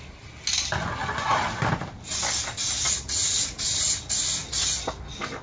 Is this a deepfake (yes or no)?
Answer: no